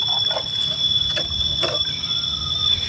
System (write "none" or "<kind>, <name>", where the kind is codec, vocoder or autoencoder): none